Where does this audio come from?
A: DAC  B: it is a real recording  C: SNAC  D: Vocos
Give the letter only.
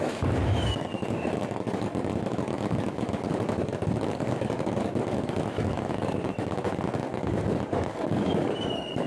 A